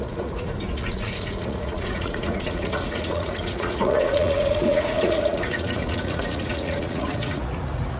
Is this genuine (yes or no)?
no